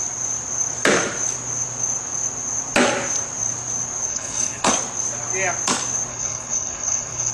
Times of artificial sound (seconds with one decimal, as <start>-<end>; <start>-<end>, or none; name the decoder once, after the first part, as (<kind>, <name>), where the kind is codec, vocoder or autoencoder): 4.1-4.7 (codec, HILCodec); 6.1-7.3